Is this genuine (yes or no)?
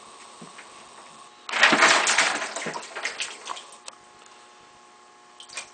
yes